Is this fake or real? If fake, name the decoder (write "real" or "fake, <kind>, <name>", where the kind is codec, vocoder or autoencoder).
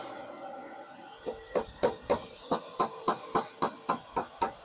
real